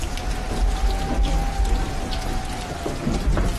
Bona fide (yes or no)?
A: yes